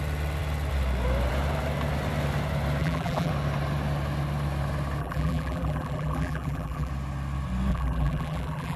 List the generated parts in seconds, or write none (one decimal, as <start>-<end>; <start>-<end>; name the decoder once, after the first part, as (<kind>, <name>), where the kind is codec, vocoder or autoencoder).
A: 2.8-3.3 (vocoder, BigVGAN v2); 5.0-6.9; 7.7-8.8